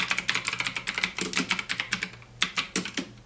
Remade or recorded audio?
recorded